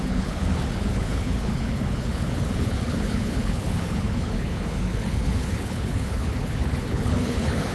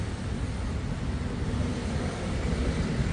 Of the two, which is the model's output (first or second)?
first